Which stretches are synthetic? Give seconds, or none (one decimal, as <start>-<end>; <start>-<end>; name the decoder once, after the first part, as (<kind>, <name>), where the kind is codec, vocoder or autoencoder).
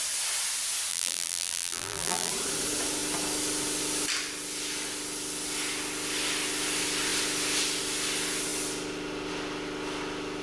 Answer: 0.9-2.3 (vocoder, BigVGAN v2)